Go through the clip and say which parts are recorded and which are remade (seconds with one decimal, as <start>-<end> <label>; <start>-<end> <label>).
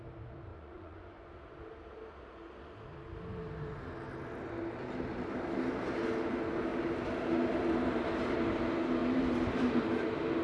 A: 0.0-0.5 recorded; 0.5-1.3 remade; 1.3-10.4 recorded